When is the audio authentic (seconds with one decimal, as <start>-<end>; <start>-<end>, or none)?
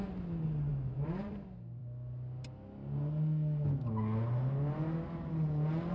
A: 0.0-0.7; 1.2-5.9